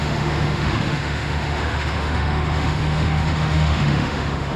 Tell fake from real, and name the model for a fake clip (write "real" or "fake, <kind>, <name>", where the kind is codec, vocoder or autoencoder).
fake, autoencoder, DAC-VAE